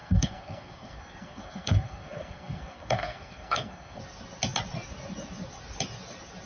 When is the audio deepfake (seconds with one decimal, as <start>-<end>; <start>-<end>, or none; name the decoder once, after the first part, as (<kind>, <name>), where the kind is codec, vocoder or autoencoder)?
0.0-4.0 (codec, SNAC)